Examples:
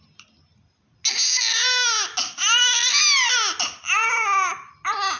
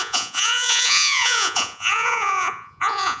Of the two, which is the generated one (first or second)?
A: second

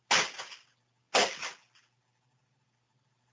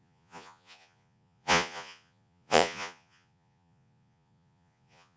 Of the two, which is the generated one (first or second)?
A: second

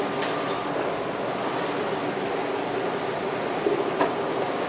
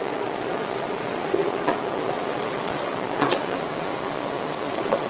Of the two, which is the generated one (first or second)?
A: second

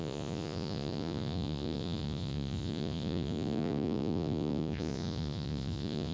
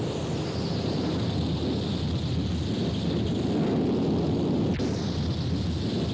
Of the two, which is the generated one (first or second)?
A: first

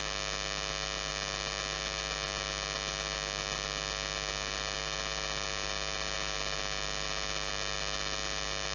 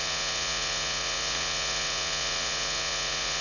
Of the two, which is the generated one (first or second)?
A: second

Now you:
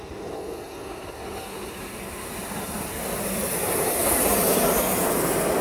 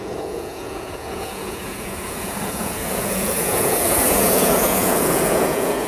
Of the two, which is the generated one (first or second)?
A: second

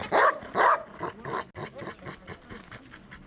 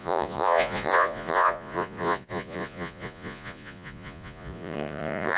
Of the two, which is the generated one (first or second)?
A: second